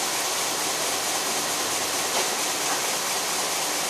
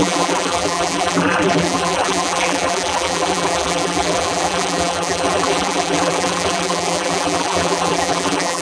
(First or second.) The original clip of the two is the first